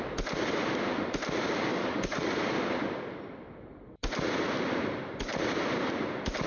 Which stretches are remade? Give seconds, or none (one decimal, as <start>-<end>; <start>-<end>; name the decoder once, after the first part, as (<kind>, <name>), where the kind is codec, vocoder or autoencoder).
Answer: 1.7-2.3 (codec, DAC)